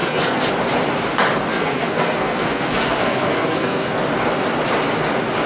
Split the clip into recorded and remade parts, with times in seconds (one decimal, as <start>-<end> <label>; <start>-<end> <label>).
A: 0.0-0.5 remade; 0.5-1.5 recorded; 1.5-4.0 remade; 4.0-5.5 recorded